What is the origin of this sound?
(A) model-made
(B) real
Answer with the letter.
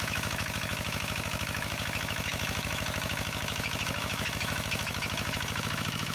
A